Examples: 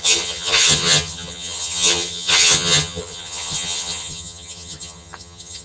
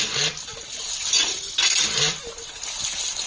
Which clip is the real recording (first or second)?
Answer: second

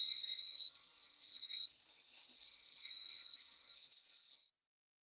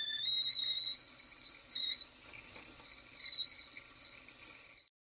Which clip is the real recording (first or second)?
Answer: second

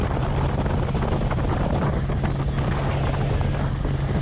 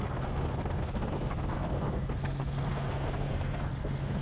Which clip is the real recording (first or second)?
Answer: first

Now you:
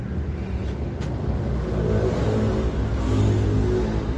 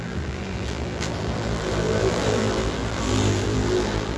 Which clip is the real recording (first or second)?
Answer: first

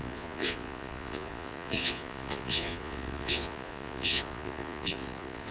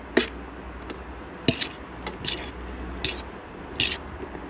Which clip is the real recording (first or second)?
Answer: second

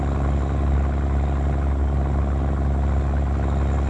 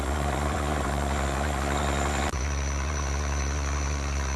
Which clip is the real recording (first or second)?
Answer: first